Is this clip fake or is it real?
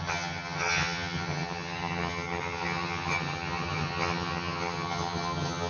fake